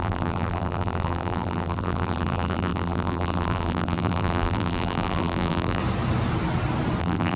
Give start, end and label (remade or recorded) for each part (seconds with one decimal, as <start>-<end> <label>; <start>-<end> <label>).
0.0-5.8 remade; 5.8-7.0 recorded; 7.0-7.4 remade